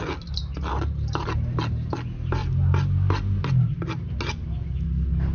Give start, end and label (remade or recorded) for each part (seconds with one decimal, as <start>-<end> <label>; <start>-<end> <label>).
0.0-0.4 recorded; 0.4-1.6 remade; 1.6-5.3 recorded